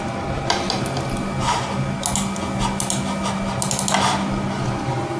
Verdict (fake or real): real